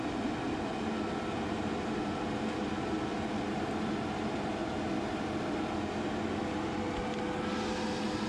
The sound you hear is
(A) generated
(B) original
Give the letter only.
B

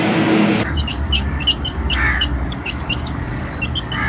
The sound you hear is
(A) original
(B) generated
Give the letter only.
B